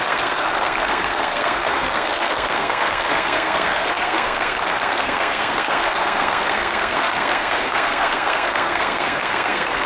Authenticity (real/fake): fake